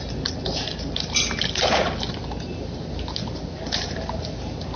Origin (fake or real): real